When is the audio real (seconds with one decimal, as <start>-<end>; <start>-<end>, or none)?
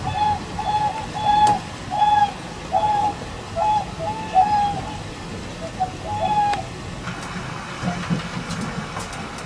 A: 0.0-9.5